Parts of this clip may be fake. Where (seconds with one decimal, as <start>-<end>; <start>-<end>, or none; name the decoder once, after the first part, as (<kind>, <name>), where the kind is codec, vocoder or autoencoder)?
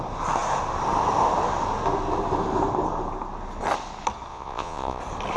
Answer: 4.3-5.0 (vocoder, Vocos)